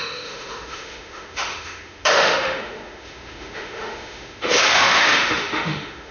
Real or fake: fake